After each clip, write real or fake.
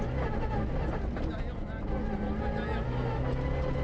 real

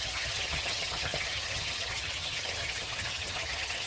fake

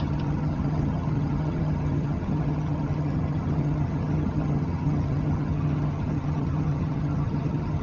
fake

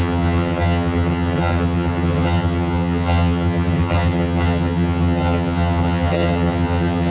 fake